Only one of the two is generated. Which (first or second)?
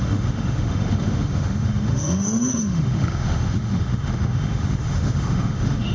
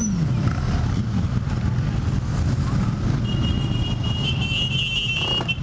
first